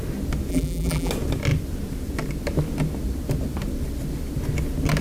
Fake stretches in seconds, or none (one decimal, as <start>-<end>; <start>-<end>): 0.5-1.1